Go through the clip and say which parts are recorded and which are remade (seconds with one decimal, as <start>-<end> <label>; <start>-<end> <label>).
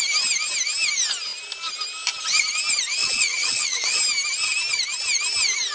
0.0-3.0 recorded; 3.0-4.0 remade; 4.0-5.7 recorded